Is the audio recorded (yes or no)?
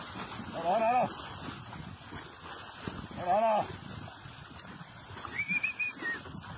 yes